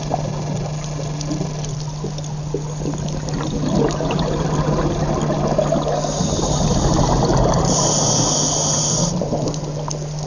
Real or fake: real